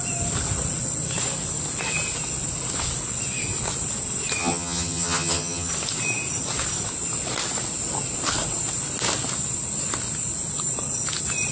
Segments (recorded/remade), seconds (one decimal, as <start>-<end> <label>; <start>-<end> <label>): 0.0-4.4 recorded; 4.4-5.7 remade; 5.7-11.5 recorded